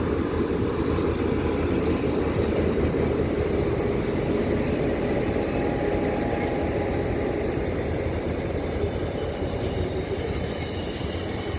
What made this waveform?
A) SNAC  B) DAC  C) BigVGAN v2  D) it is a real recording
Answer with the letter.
D